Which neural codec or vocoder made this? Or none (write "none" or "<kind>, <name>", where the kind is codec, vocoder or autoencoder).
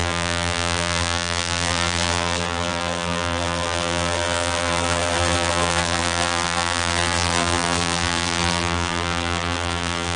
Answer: vocoder, BigVGAN v2